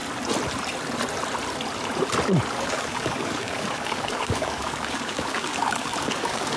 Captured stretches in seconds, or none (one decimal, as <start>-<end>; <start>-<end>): 0.0-2.5